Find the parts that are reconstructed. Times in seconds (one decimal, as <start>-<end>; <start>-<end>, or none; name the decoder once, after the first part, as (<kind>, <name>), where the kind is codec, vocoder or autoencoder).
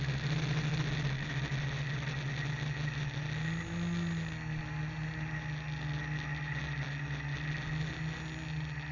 none